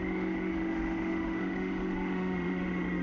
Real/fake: fake